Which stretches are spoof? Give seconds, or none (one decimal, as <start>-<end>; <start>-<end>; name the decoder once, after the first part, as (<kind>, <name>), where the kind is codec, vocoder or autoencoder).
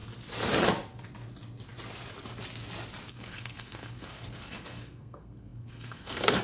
3.1-6.4 (codec, SNAC)